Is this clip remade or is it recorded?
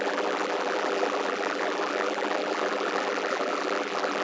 remade